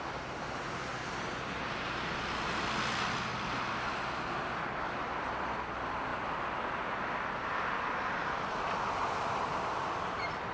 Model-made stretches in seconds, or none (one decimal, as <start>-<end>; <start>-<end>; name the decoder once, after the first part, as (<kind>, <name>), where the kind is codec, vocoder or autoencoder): none

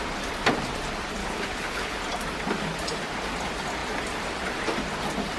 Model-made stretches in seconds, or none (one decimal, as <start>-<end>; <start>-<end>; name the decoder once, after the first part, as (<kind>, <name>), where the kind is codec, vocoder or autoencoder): 1.2-2.0 (codec, HILCodec)

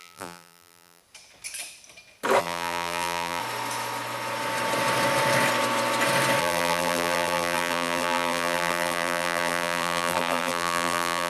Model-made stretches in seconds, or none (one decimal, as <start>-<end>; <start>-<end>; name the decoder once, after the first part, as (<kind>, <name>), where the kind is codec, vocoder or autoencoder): 0.0-1.0 (vocoder, BigVGAN v2); 2.4-3.4; 6.4-11.3